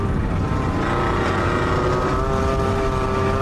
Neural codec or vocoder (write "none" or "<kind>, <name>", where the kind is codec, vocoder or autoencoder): none